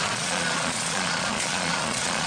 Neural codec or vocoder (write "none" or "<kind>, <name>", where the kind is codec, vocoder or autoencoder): vocoder, Vocos